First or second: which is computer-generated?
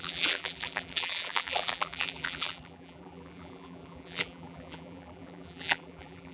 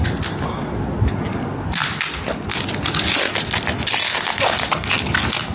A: first